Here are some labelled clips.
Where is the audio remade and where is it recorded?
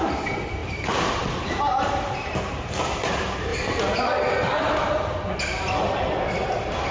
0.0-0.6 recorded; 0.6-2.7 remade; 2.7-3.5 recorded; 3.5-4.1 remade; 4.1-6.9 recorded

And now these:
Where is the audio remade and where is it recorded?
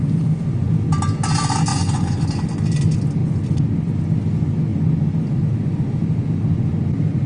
0.0-1.7 recorded; 1.7-2.2 remade; 2.2-7.3 recorded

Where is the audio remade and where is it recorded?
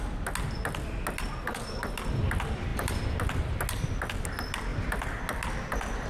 0.0-2.7 recorded; 2.7-3.5 remade; 3.5-4.7 recorded; 4.7-5.2 remade; 5.2-6.1 recorded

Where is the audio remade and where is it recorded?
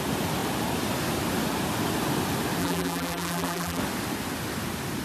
0.0-2.6 recorded; 2.6-3.8 remade; 3.8-5.0 recorded